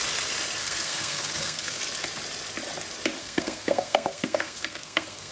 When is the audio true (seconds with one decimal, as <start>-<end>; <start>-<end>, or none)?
0.0-0.6; 1.8-3.2